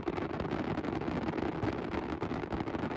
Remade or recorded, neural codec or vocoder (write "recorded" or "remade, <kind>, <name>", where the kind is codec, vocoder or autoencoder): recorded